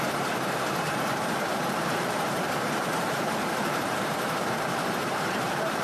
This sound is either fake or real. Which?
fake